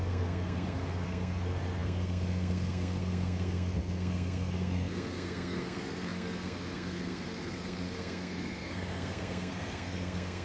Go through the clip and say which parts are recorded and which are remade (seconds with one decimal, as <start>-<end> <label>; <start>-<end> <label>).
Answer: 0.0-10.4 remade